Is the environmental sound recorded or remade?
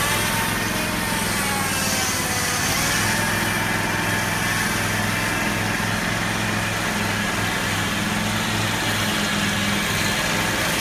recorded